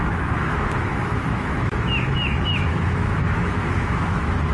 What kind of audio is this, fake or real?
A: fake